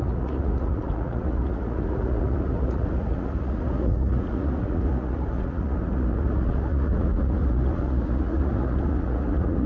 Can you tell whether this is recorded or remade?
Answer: remade